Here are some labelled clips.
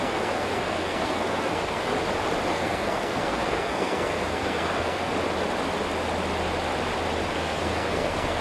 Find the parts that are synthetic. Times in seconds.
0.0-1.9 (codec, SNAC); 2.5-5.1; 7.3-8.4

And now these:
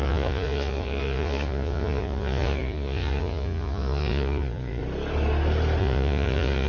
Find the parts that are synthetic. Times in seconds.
0.0-4.8 (vocoder, Vocos); 5.8-6.7

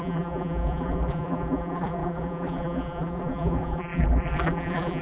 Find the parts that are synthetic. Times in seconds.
0.0-5.0 (vocoder, BigVGAN v2)